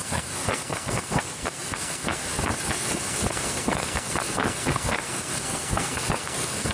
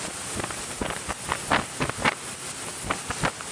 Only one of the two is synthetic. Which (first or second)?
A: first